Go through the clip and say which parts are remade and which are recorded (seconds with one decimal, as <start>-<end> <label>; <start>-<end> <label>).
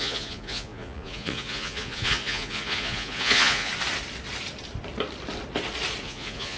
0.0-3.7 remade; 3.7-6.0 recorded; 6.0-6.6 remade